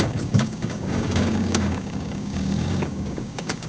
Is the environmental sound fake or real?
fake